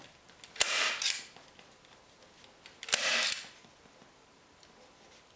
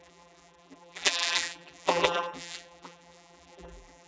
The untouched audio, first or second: first